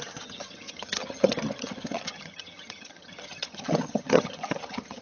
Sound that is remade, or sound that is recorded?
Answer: remade